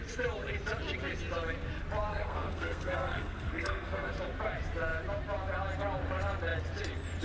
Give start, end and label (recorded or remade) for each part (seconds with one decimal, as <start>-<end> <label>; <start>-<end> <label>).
0.0-2.1 recorded; 2.1-4.1 remade; 4.1-7.2 recorded